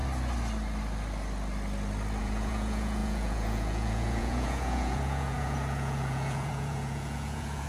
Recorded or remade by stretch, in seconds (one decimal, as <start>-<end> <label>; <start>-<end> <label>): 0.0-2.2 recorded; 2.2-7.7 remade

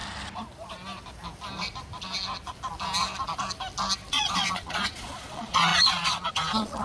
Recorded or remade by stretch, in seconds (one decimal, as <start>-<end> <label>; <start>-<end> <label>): 0.0-4.1 recorded; 4.1-6.8 remade

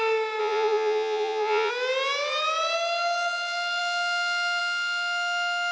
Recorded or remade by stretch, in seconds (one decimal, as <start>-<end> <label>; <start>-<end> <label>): 0.0-0.4 recorded; 0.4-1.7 remade; 1.7-5.7 recorded

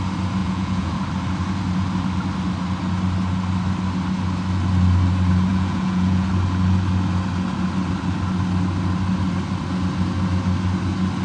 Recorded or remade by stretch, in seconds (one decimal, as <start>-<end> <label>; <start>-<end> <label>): 0.0-0.4 recorded; 0.4-1.0 remade; 1.0-5.5 recorded; 5.5-6.3 remade; 6.3-11.2 recorded

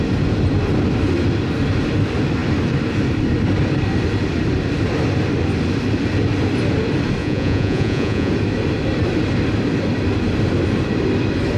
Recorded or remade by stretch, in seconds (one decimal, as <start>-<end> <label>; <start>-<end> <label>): 0.0-7.2 recorded; 7.2-8.3 remade; 8.3-11.6 recorded